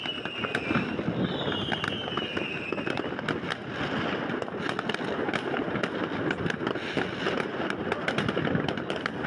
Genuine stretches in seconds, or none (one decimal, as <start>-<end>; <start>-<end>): 0.0-9.3